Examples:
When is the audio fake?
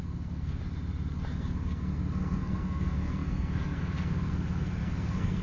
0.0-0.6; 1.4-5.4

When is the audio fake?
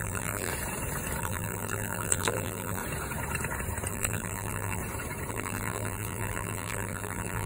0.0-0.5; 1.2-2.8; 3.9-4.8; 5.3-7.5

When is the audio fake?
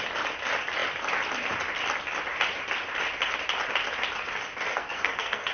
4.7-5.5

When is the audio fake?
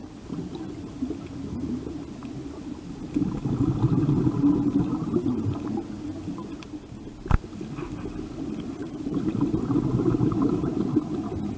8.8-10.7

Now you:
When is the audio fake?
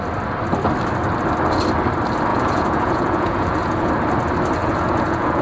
2.3-3.9; 4.6-5.4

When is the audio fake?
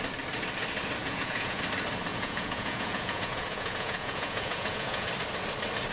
1.0-1.6; 2.1-5.1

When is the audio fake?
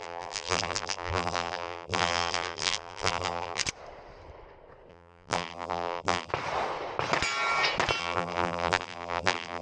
0.0-3.6; 4.9-6.3; 8.0-9.6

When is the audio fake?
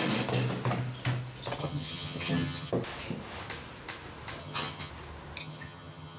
1.6-2.7; 4.4-4.9; 5.4-6.2